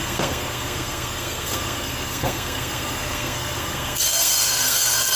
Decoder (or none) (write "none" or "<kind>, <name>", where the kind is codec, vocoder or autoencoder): codec, SNAC